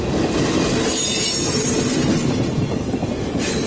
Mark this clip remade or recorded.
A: recorded